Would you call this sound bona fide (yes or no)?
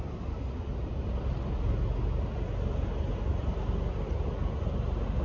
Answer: yes